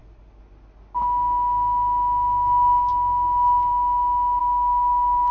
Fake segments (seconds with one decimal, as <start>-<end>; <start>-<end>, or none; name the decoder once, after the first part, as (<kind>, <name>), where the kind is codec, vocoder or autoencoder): 4.4-5.3 (codec, DAC)